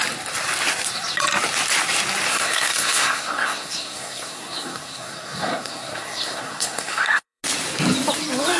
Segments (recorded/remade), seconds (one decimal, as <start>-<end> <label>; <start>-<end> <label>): 0.0-2.3 recorded; 2.3-7.4 remade; 7.4-8.6 recorded